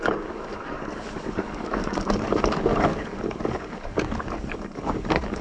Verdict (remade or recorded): remade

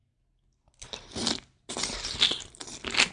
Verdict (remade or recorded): recorded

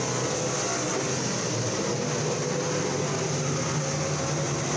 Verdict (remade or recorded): recorded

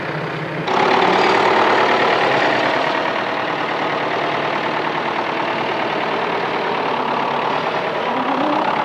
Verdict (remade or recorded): recorded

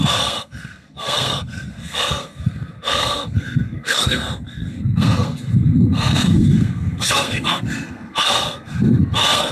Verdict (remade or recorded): remade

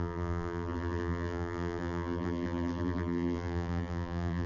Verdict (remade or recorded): remade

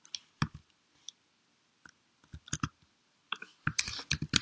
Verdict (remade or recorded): recorded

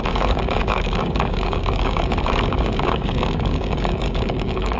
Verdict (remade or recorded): remade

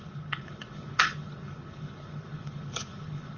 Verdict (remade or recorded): remade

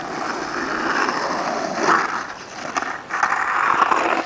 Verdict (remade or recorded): recorded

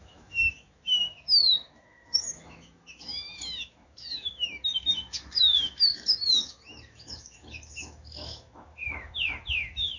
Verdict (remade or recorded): remade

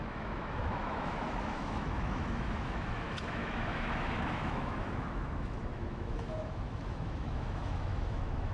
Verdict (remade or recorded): remade